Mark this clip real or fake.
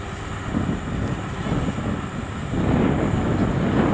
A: real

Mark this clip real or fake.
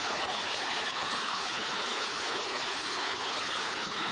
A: fake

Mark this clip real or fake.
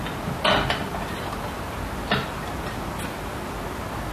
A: real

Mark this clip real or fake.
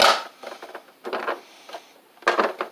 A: real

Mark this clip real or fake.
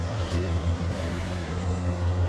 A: fake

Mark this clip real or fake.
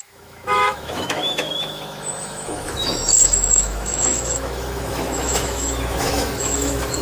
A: fake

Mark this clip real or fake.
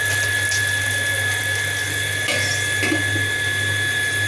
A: real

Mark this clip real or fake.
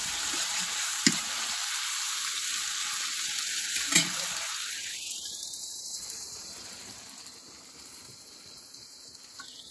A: fake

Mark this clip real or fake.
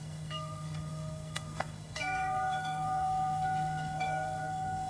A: fake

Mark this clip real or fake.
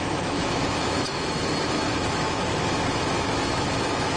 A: fake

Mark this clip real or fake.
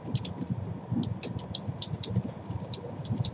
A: fake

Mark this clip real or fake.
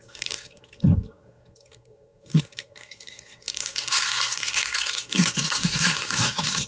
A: fake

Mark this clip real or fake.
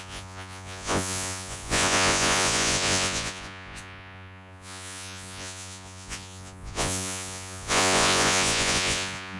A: fake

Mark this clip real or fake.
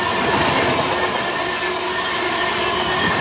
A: real